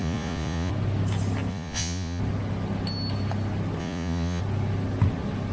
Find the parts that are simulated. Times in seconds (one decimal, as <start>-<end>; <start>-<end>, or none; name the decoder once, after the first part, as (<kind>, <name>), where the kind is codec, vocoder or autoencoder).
0.0-0.7 (vocoder, Vocos); 1.5-2.2; 3.8-4.4

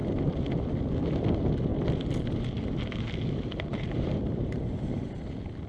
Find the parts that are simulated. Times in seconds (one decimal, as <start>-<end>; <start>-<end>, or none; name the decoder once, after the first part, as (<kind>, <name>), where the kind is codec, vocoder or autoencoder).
1.7-5.1 (vocoder, BigVGAN v2)

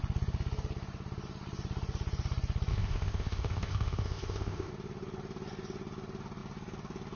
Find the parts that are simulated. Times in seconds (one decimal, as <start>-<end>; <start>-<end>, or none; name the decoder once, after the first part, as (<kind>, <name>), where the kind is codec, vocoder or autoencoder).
2.7-4.7 (codec, ZipCodec)

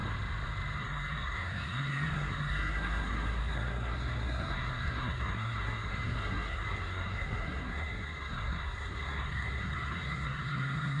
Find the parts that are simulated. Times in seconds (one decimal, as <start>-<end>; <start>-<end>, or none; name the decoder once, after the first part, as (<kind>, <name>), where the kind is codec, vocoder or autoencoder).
0.8-11.0 (codec, SNAC)

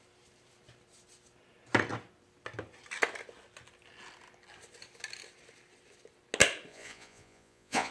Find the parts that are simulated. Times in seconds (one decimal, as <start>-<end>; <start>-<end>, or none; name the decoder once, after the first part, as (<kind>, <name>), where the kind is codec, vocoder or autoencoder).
6.7-7.9 (vocoder, Vocos)

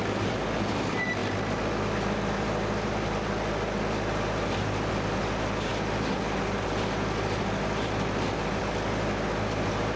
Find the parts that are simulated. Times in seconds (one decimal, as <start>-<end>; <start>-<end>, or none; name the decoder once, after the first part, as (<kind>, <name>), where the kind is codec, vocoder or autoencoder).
none

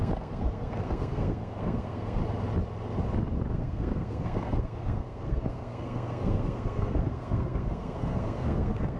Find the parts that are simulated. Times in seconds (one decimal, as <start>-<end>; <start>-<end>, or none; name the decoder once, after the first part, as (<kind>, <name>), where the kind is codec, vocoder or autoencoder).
0.0-2.2 (codec, SNAC); 3.5-9.0

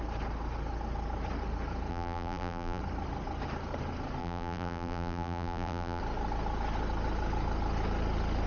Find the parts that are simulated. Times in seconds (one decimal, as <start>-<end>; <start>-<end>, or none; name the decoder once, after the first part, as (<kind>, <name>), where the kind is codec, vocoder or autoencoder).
1.9-2.8 (vocoder, BigVGAN v2); 4.2-6.0